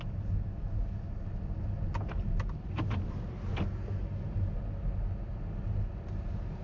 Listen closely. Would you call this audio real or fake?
real